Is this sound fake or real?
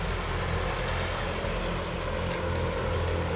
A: real